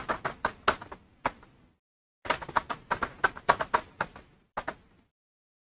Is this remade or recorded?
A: recorded